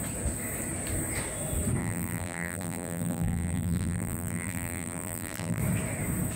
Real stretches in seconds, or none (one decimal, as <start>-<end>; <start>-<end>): 0.0-1.8; 5.6-6.4